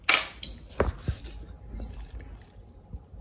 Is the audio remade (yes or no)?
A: no